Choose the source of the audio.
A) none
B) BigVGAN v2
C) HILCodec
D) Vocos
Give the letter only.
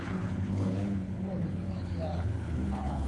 C